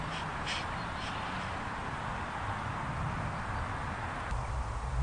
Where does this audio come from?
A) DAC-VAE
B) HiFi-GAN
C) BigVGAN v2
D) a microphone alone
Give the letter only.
D